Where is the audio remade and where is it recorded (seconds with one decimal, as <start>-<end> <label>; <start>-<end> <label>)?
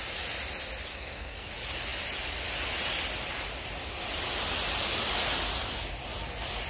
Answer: 0.0-0.9 recorded; 0.9-1.5 remade; 1.5-6.7 recorded